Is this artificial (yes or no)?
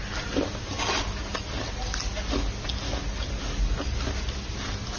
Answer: no